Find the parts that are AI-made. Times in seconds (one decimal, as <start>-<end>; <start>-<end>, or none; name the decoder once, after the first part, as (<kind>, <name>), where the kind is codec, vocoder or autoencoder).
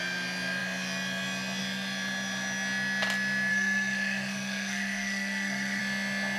3.5-5.8 (codec, SNAC)